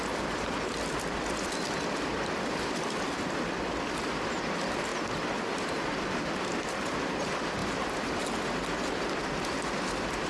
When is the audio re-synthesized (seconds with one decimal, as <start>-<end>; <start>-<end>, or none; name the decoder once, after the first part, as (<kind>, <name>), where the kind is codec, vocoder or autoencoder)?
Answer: none